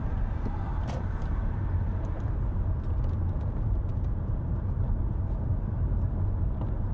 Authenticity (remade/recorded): remade